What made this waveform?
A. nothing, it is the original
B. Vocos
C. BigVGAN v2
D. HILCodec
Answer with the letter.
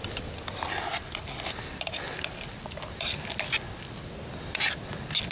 A